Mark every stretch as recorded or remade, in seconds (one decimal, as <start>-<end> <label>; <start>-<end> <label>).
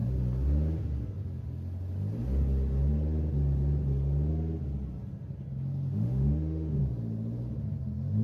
0.0-5.9 recorded; 5.9-6.8 remade; 6.8-8.2 recorded